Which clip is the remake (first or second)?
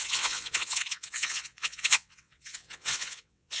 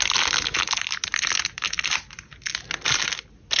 first